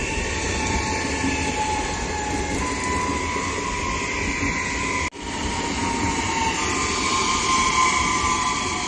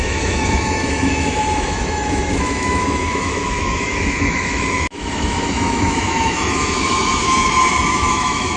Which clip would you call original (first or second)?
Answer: first